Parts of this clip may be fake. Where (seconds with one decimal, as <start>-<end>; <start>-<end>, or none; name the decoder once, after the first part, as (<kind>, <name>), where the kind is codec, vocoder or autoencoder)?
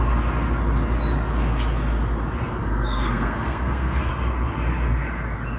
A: 2.6-4.1 (codec, SNAC)